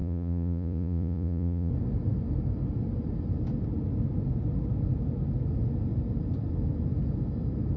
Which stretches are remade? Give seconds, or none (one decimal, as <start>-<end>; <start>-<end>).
0.0-1.7